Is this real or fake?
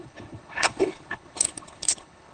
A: fake